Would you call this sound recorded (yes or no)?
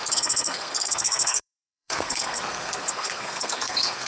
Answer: no